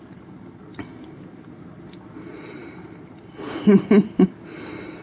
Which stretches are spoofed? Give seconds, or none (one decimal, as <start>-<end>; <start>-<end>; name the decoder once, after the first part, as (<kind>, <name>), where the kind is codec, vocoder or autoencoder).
none

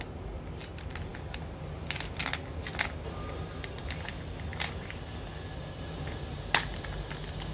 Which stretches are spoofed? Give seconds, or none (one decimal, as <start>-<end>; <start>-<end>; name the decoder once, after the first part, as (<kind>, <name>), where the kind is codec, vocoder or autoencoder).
none

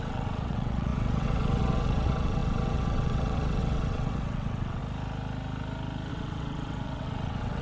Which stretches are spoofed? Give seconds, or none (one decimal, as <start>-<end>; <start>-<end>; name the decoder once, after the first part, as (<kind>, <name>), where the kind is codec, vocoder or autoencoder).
0.0-4.8 (vocoder, WaveNeXt); 6.1-7.6

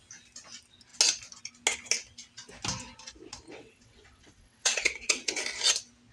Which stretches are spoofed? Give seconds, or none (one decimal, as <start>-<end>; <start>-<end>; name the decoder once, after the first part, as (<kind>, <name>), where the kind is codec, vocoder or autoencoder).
3.5-5.4 (vocoder, WaveNeXt)